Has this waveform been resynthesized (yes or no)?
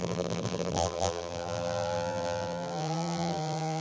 yes